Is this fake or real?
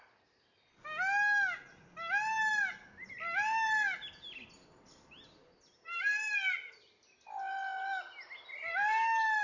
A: real